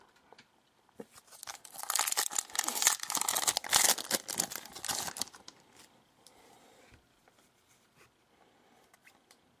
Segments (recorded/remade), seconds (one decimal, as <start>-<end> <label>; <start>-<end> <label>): 0.0-9.6 recorded

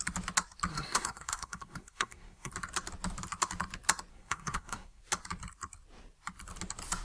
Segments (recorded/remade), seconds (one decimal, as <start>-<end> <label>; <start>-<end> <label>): 0.0-0.7 recorded; 0.7-2.5 remade; 2.5-4.1 recorded; 4.1-5.0 remade; 5.0-7.0 recorded

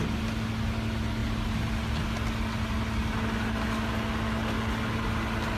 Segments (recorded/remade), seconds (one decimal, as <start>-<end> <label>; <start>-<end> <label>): 0.0-5.6 recorded

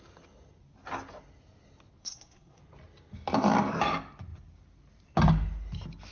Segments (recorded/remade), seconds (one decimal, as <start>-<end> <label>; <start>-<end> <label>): 0.0-2.0 recorded; 2.0-2.6 remade; 2.6-6.1 recorded

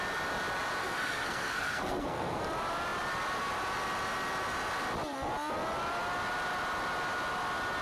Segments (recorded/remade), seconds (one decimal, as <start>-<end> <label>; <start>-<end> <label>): 0.0-0.8 recorded; 0.8-2.4 remade; 2.4-7.8 recorded

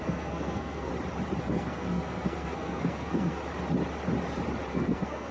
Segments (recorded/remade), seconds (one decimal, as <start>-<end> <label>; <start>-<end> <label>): 0.0-0.9 remade; 0.9-1.4 recorded; 1.4-3.4 remade; 3.4-4.7 recorded; 4.7-5.3 remade